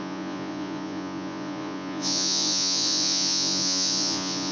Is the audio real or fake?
fake